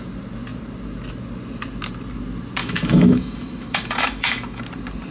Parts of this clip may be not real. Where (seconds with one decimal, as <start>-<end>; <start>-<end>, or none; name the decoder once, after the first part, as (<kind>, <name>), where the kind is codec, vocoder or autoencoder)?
2.6-4.6 (autoencoder, DAC-VAE)